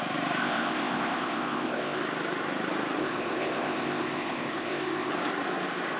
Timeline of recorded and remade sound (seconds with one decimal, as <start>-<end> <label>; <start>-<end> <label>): 0.0-0.4 recorded; 0.4-2.0 remade; 2.0-3.0 recorded; 3.0-5.1 remade; 5.1-6.0 recorded